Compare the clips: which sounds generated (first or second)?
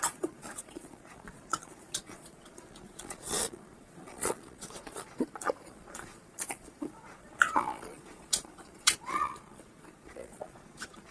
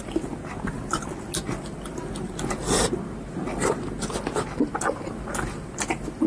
first